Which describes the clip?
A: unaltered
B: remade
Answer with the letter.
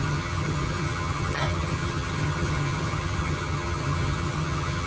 B